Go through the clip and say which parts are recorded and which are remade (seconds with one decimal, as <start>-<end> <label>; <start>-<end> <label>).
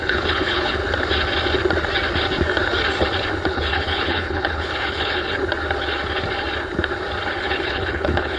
0.0-0.8 remade; 0.8-3.5 recorded; 3.5-5.4 remade; 5.4-7.4 recorded; 7.4-8.4 remade